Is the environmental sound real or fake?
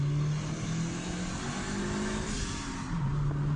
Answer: real